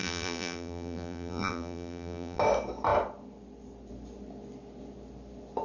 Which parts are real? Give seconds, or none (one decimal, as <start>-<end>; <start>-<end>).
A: 2.4-5.6